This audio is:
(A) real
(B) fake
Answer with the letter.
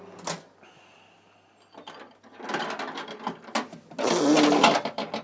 A